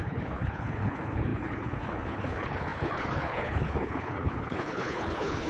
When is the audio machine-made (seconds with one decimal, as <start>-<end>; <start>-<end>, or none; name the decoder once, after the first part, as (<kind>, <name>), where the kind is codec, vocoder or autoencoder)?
0.0-5.5 (codec, HILCodec)